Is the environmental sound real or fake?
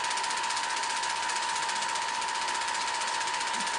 real